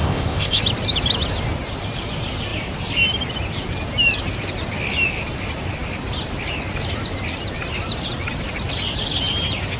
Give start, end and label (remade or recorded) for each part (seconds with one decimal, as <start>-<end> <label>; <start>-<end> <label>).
0.0-0.6 remade; 0.6-9.8 recorded